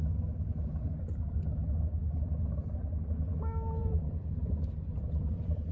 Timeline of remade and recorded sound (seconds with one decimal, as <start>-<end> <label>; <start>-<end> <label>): 0.0-3.8 recorded; 3.8-4.6 remade; 4.6-5.0 recorded; 5.0-5.7 remade